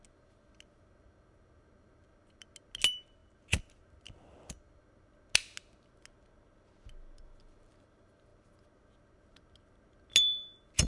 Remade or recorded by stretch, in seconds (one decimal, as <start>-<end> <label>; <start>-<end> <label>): 0.0-10.9 recorded